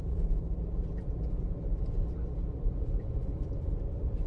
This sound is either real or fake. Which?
fake